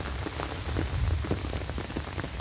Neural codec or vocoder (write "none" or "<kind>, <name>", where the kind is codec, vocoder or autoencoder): none